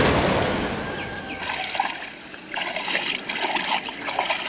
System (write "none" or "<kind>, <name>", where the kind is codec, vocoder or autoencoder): none